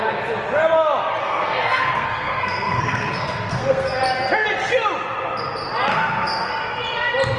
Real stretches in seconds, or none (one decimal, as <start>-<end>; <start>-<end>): 0.0-1.2; 4.0-5.9; 6.5-7.4